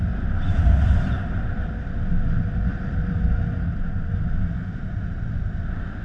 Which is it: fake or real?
real